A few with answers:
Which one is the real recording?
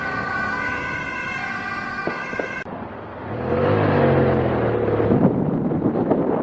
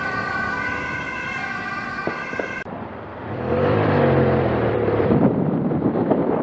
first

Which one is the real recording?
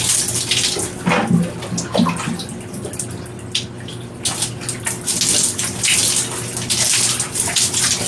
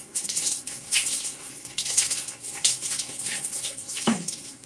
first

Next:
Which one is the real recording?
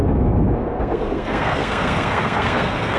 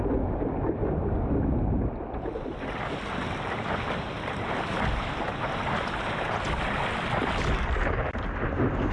second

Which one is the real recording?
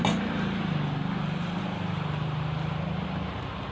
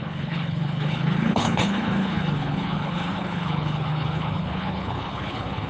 first